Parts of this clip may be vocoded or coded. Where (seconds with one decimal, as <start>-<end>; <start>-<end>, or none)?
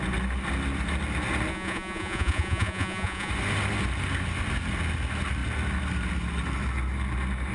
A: 1.5-3.3